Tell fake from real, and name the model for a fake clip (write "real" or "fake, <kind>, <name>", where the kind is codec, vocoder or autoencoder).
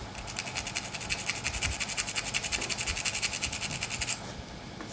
real